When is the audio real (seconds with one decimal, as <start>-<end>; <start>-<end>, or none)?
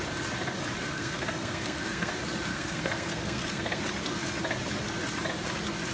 0.0-0.8; 2.1-2.5; 3.8-5.9